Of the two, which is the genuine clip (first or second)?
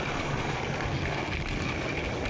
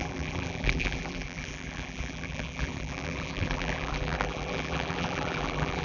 first